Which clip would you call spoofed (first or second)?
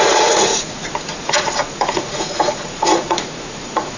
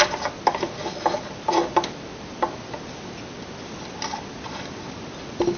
first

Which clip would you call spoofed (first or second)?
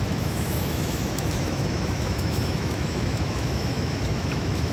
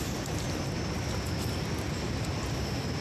first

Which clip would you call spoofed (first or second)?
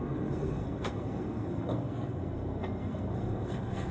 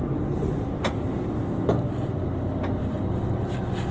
first